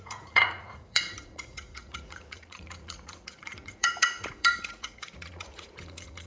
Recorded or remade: remade